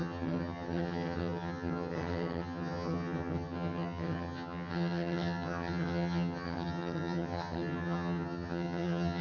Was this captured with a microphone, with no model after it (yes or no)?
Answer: no